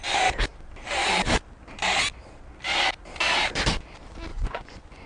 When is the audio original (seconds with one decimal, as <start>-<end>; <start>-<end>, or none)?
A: 0.0-4.3